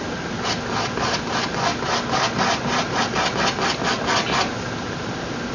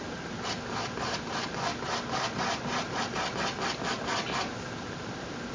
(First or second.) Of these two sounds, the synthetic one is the second